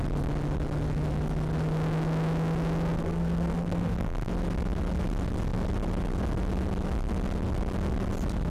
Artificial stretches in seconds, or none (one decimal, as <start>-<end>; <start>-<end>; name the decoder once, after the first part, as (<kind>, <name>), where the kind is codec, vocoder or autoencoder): 3.0-4.3 (codec, SNAC)